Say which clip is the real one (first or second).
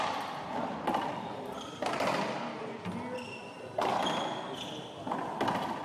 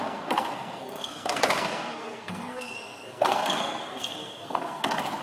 first